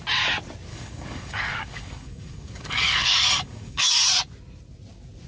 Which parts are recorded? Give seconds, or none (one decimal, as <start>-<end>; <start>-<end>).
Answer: 0.0-0.7; 3.9-5.3